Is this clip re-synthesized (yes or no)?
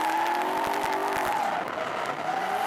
no